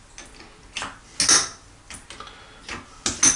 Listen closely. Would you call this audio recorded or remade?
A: recorded